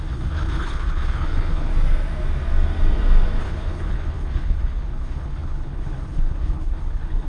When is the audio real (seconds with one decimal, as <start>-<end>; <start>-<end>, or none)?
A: 1.7-3.4